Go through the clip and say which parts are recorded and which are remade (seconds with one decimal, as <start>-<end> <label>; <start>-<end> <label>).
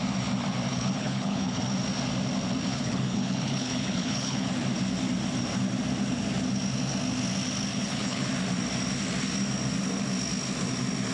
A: 0.0-0.7 recorded; 0.7-1.6 remade; 1.6-2.7 recorded; 2.7-4.5 remade; 4.5-7.7 recorded; 7.7-8.3 remade; 8.3-11.1 recorded